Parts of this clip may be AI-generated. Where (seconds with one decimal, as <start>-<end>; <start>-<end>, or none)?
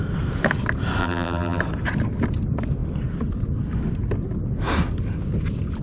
1.0-1.6